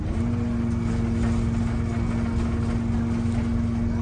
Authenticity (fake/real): real